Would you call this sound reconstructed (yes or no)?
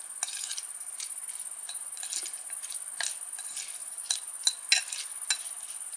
no